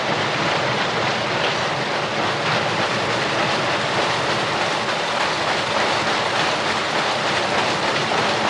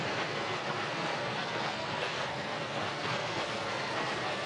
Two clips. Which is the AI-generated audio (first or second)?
second